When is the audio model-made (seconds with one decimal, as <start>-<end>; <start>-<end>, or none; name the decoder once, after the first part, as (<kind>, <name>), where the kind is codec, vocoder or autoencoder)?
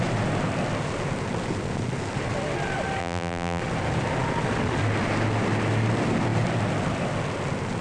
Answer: 3.0-3.6 (vocoder, BigVGAN v2)